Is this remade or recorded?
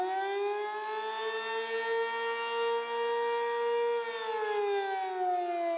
recorded